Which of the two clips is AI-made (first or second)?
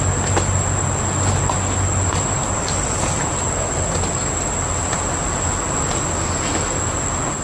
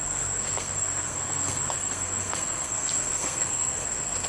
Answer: second